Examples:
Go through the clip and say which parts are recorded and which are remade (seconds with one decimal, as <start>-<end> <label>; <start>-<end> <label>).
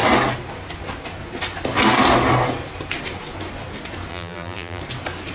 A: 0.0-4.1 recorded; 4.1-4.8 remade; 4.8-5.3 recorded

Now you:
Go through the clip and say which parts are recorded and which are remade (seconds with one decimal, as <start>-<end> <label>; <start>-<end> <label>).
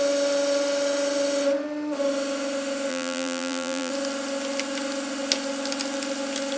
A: 0.0-2.9 recorded; 2.9-3.9 remade; 3.9-6.6 recorded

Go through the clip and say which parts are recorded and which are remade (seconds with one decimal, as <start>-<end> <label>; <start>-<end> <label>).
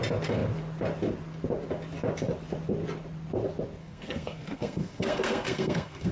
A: 0.0-3.8 recorded; 3.8-6.1 remade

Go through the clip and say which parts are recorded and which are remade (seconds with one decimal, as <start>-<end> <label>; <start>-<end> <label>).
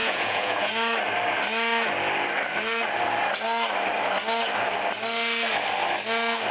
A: 0.0-0.7 remade; 0.7-6.5 recorded